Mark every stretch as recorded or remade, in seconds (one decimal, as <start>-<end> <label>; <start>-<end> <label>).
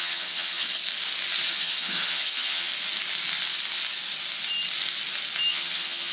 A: 0.0-0.8 remade; 0.8-1.5 recorded; 1.5-2.7 remade; 2.7-5.5 recorded; 5.5-6.1 remade